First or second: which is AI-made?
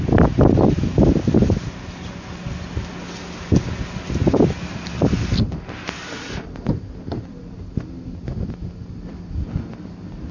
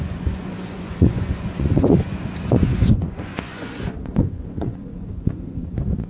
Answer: second